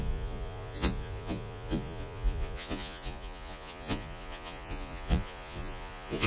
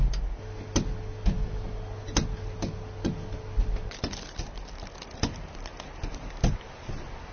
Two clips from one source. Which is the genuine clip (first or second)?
second